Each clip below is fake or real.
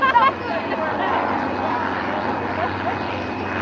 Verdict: fake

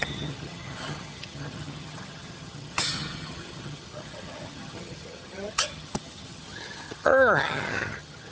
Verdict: fake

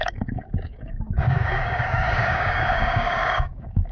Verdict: fake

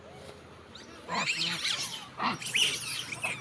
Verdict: real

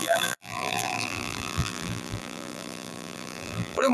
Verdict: fake